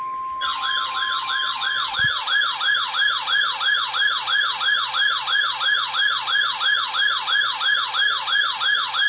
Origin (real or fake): real